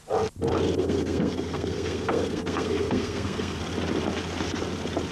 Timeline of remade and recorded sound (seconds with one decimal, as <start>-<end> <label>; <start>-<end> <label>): 0.0-0.8 recorded; 0.8-3.6 remade; 3.6-5.1 recorded